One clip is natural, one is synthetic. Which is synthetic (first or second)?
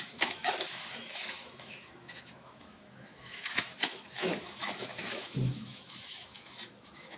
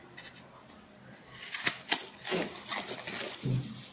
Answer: first